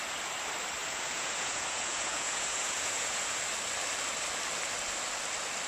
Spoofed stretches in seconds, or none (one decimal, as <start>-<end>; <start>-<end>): 0.8-3.4

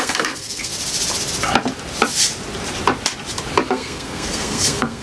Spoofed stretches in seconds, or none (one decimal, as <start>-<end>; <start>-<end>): 0.0-0.7; 3.7-5.0

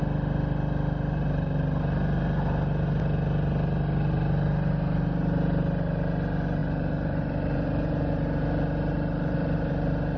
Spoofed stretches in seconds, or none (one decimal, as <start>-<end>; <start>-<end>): 6.6-10.2